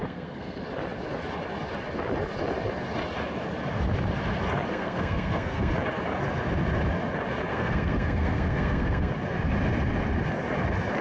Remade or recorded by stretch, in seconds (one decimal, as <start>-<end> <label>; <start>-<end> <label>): 0.0-0.6 remade; 0.6-4.7 recorded; 4.7-5.7 remade; 5.7-7.5 recorded; 7.5-9.1 remade; 9.1-11.0 recorded